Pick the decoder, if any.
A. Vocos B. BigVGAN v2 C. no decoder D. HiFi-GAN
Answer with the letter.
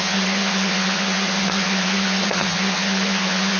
D